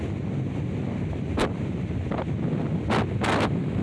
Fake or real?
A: real